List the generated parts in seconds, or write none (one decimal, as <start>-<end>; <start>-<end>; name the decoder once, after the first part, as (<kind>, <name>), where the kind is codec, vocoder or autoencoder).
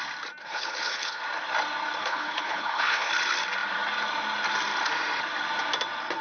0.4-1.2 (codec, HILCodec); 2.0-3.1